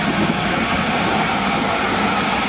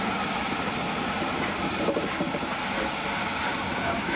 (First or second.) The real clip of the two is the first